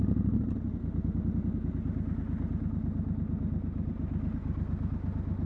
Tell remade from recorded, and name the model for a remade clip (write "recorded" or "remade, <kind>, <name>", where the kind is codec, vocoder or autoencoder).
recorded